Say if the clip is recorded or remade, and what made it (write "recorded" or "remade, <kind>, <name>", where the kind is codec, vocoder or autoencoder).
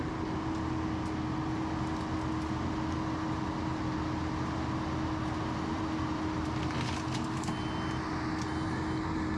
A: recorded